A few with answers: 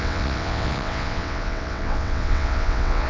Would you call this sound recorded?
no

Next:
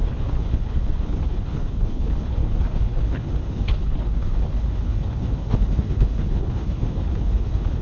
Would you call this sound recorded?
no